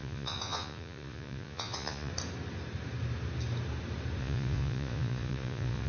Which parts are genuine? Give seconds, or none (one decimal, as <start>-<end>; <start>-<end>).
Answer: 2.1-4.2